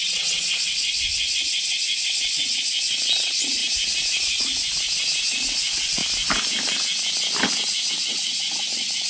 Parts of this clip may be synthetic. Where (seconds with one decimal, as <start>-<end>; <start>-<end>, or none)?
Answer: 0.0-3.6; 5.5-6.0; 7.9-9.1